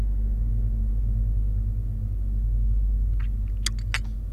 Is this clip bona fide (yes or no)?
yes